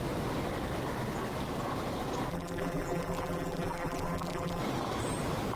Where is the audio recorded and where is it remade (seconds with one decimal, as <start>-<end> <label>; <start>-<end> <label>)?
0.0-2.3 recorded; 2.3-4.6 remade; 4.6-5.6 recorded